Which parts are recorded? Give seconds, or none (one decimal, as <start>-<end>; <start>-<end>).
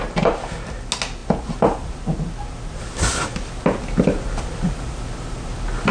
0.0-5.9